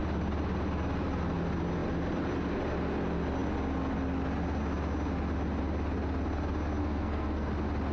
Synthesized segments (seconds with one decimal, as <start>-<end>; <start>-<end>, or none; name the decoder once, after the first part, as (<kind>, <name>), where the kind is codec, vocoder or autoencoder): 6.8-7.5 (codec, SNAC)